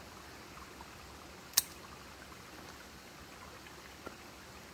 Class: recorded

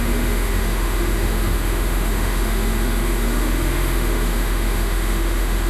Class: remade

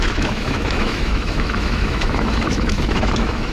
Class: remade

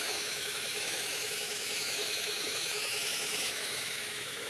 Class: remade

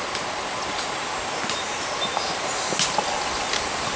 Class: recorded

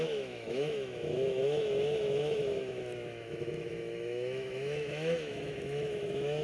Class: remade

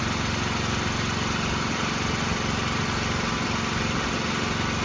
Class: recorded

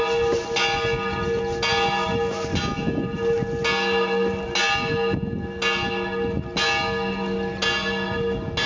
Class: recorded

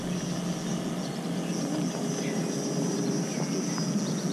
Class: recorded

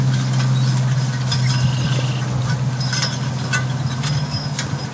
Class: recorded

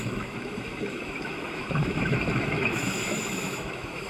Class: remade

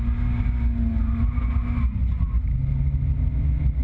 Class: recorded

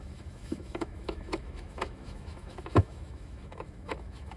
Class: remade